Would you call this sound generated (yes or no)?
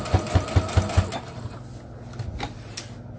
no